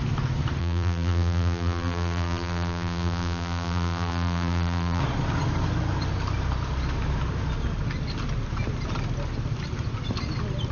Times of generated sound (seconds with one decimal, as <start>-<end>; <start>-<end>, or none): 0.6-5.0